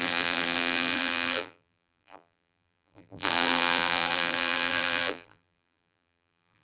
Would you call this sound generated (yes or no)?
yes